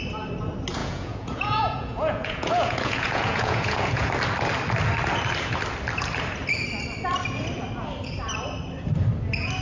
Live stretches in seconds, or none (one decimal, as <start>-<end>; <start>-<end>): 0.0-0.8; 4.1-9.6

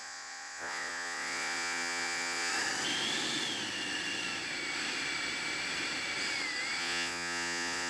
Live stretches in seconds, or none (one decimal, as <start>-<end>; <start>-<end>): 2.5-6.8